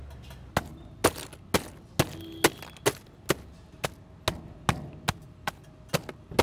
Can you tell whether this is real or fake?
real